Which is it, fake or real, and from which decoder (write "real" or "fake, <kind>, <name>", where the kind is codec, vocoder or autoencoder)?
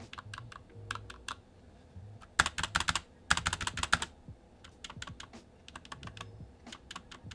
real